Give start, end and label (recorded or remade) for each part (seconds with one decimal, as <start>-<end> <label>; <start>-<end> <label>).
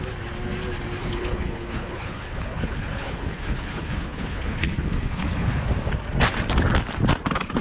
0.0-1.0 recorded; 1.0-5.6 remade; 5.6-7.6 recorded